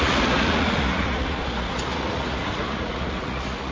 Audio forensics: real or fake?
fake